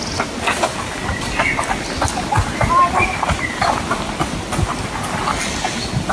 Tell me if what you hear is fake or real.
real